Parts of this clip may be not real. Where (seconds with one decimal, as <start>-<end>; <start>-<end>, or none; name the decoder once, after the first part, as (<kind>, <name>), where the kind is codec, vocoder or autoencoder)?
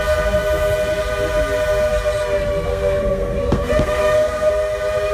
2.7-4.5 (codec, SNAC)